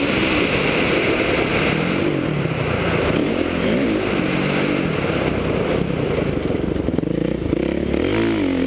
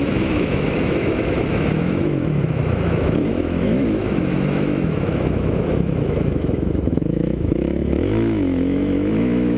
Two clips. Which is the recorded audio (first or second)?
first